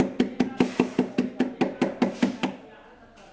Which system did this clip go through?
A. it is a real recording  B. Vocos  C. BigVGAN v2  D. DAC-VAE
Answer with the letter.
A